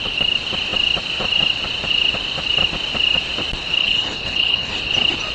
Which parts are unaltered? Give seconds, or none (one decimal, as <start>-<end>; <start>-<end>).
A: 0.0-3.8; 4.7-5.3